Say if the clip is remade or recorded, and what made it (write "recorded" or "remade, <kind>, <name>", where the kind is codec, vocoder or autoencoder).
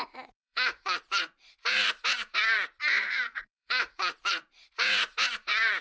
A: remade, vocoder, Vocos